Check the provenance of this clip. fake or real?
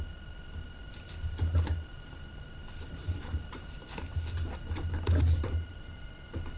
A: fake